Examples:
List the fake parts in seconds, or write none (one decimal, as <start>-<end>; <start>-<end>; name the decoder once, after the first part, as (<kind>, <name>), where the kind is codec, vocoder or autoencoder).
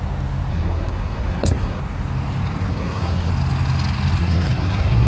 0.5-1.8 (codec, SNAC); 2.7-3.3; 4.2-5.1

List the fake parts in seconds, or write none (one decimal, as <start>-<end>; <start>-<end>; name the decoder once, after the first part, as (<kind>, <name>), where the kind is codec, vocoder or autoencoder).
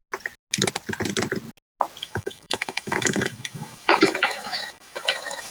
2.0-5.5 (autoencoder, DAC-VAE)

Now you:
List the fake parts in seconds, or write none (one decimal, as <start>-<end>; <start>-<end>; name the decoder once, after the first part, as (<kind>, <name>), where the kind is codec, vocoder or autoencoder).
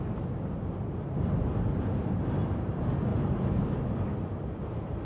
3.1-3.8 (vocoder, BigVGAN v2)